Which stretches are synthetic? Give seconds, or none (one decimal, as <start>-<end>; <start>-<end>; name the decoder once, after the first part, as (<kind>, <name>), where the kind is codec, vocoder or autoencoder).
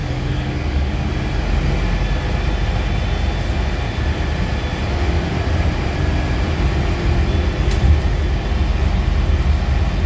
0.0-1.1 (codec, DAC)